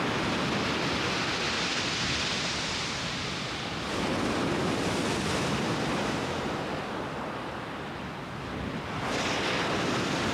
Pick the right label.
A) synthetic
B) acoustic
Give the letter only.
B